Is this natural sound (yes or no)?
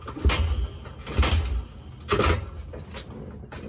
yes